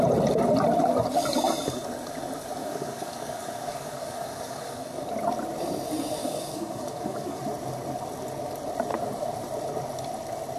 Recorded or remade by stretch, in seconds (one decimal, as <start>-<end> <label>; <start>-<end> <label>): 0.0-2.6 recorded; 2.6-5.0 remade; 5.0-6.2 recorded; 6.2-7.4 remade; 7.4-10.6 recorded